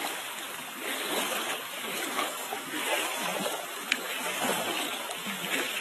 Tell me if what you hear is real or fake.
fake